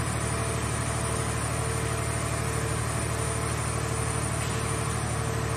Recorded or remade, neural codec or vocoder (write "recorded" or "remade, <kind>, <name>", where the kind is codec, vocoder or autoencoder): recorded